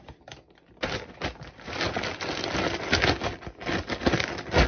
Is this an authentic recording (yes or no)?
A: yes